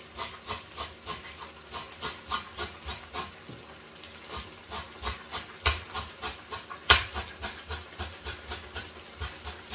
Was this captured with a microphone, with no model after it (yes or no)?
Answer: yes